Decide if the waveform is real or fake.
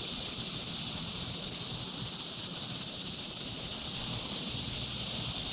fake